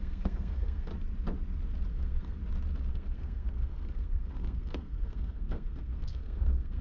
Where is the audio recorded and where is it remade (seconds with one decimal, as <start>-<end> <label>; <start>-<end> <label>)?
0.0-0.9 remade; 0.9-1.9 recorded; 1.9-2.4 remade; 2.4-2.9 recorded; 2.9-6.8 remade